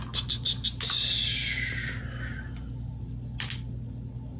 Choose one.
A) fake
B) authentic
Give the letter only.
B